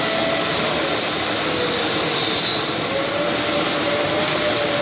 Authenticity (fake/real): real